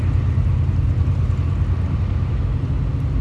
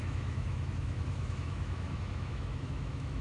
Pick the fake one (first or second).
second